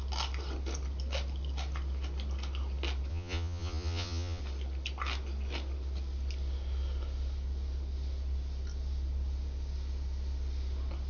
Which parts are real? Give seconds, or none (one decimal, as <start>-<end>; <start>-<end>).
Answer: 0.0-3.1; 4.4-11.1